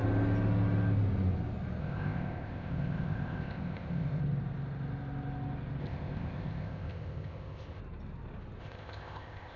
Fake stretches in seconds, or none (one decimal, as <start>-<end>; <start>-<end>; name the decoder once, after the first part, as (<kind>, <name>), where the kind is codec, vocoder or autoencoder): 1.8-4.2 (codec, ZipCodec); 5.8-7.8; 8.6-9.6